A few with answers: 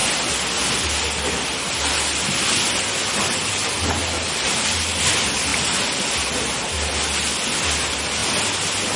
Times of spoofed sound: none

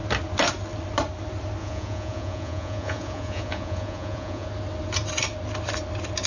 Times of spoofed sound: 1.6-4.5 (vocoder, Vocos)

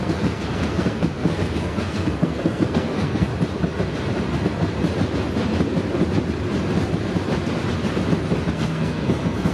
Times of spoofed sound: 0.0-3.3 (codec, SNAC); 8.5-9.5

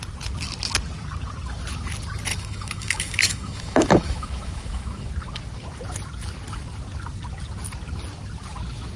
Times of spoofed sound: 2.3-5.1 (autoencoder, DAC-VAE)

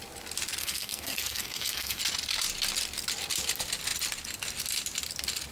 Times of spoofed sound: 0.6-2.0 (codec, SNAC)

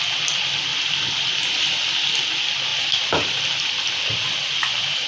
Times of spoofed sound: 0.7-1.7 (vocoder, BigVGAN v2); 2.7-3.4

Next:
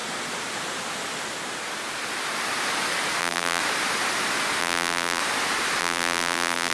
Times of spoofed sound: 3.2-3.6 (vocoder, BigVGAN v2); 4.6-5.2; 5.8-6.7

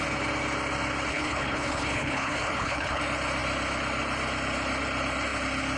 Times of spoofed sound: 1.1-3.0 (codec, HILCodec)